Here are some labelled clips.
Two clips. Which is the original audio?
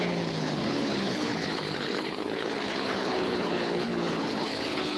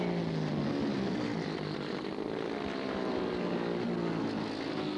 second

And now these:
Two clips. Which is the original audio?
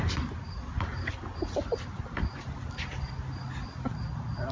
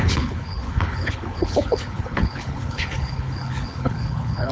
first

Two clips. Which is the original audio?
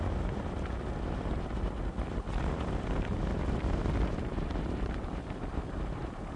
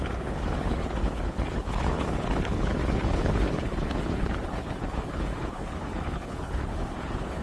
first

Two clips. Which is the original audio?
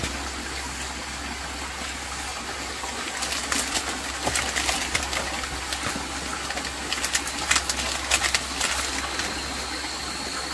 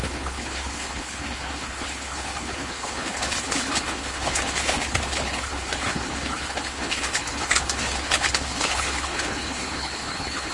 first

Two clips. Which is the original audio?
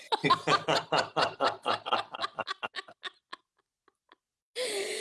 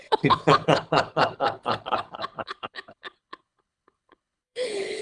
first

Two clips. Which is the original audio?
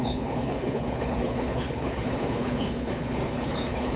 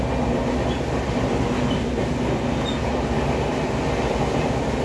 second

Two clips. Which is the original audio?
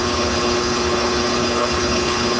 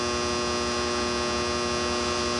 second